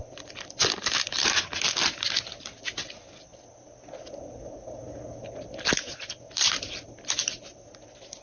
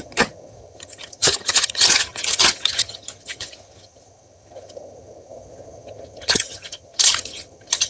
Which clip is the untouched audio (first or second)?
first